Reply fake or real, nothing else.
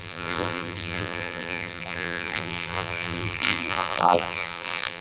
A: fake